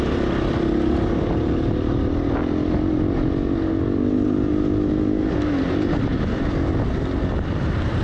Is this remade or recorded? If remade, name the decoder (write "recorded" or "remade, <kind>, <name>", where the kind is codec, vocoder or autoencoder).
recorded